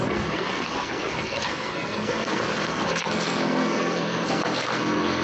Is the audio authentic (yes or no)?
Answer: no